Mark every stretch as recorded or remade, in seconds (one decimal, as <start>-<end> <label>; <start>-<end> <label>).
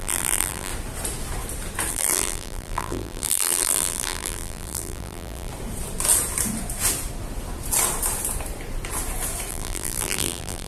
0.0-0.7 remade; 0.7-1.9 recorded; 1.9-5.5 remade; 5.5-9.5 recorded; 9.5-10.7 remade